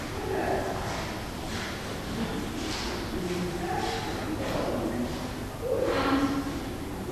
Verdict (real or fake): real